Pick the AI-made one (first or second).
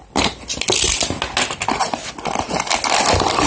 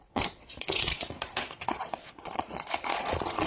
second